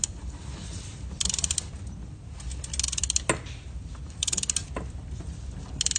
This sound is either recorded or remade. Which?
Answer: recorded